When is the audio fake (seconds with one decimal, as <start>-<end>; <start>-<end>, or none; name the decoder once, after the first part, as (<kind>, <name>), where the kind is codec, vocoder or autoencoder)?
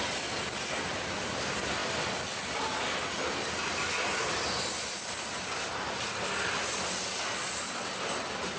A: none